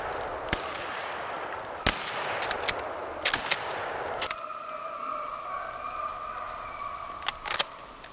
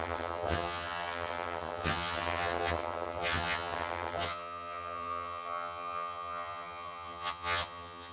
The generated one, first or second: second